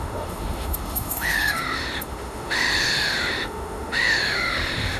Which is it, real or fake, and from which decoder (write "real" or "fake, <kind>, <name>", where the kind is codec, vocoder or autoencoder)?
fake, autoencoder, DAC-VAE